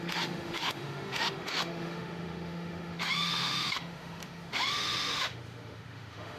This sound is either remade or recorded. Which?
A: remade